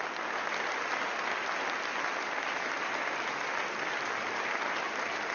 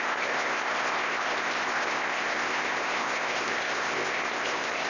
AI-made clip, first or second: second